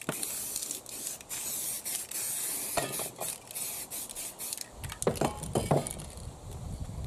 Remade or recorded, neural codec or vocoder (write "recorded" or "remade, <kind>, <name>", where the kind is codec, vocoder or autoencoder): recorded